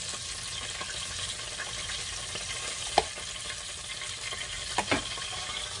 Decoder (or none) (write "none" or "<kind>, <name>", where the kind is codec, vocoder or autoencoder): none